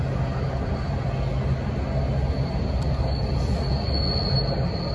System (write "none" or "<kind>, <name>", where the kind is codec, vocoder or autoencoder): none